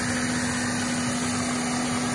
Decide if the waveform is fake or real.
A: real